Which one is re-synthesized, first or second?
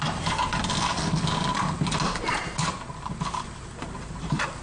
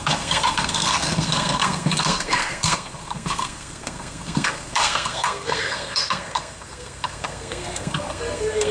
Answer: second